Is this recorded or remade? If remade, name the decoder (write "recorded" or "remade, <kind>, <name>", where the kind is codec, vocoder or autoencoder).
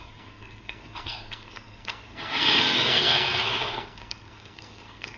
remade, codec, SNAC